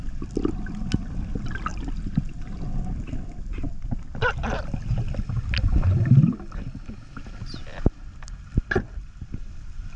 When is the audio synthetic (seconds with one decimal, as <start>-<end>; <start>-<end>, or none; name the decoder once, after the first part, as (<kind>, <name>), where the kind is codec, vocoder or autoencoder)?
none